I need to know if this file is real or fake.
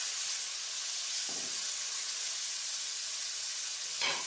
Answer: fake